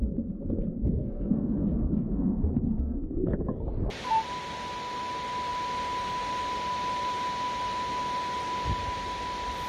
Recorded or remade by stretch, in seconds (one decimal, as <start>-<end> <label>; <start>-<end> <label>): 0.0-0.7 recorded; 0.7-3.5 remade; 3.5-9.7 recorded